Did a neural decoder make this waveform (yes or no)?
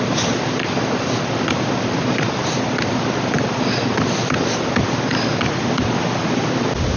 no